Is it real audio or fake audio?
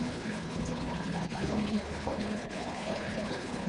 fake